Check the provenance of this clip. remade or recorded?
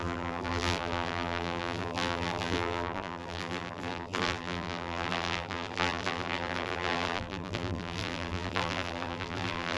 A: remade